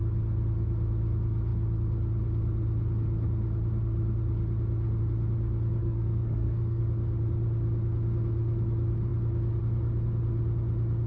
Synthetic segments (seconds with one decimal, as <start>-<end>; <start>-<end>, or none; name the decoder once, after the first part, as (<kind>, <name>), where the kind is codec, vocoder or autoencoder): 5.8-6.8 (codec, SNAC)